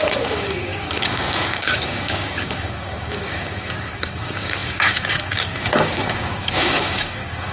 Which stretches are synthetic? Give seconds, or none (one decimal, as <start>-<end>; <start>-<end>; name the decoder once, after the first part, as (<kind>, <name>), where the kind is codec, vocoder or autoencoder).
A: 0.0-7.5 (codec, DAC)

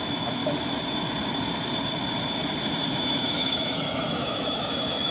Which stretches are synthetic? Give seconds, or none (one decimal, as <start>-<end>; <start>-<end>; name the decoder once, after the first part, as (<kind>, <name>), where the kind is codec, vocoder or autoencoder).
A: 0.0-0.4 (autoencoder, DAC-VAE); 2.9-5.1

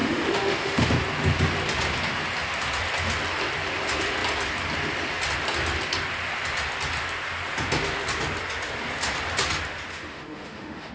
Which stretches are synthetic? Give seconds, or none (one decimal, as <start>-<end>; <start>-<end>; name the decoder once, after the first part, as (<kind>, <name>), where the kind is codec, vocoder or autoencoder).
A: 0.0-0.9 (autoencoder, DAC-VAE); 9.9-10.9

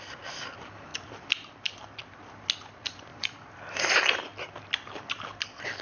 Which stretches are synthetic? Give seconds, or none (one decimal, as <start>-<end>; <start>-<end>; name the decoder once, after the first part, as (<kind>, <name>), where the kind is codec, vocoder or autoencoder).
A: 3.1-3.8 (vocoder, BigVGAN v2)

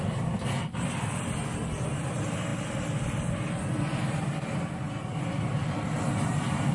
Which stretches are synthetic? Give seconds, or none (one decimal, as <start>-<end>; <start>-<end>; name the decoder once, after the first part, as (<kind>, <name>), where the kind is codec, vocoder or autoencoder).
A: none